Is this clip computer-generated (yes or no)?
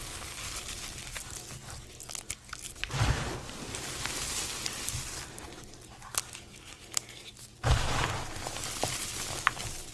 no